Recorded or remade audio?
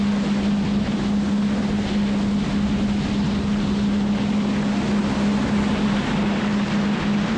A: recorded